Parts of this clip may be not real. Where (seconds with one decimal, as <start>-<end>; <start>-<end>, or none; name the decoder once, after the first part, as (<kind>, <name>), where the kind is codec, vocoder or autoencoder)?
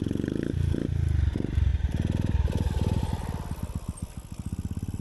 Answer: none